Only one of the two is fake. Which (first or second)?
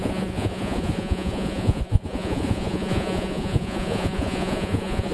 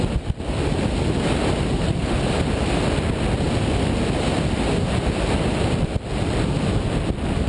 first